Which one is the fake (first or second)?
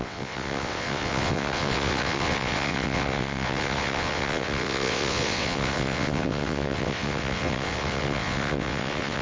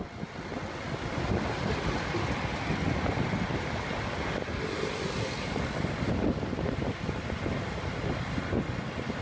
first